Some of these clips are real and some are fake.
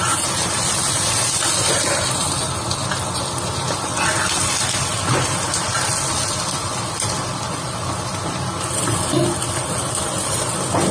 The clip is real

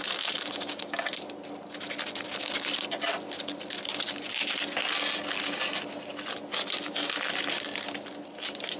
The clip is real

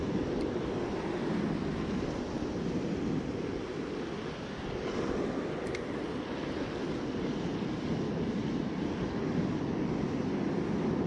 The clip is real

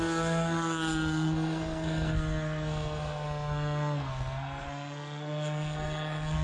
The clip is fake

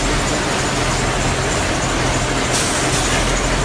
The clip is real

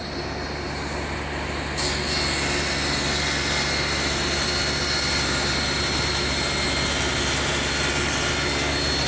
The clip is real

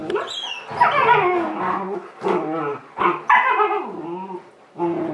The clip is real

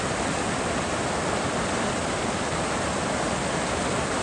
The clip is real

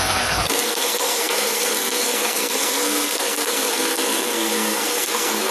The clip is fake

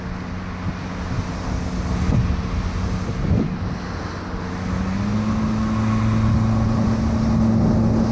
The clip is real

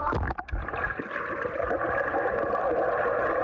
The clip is real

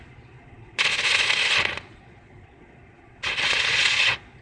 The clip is fake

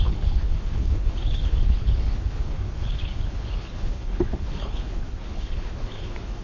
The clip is fake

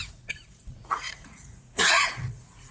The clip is fake